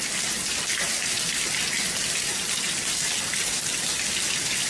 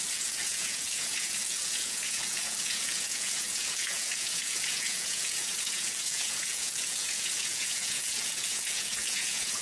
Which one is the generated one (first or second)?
second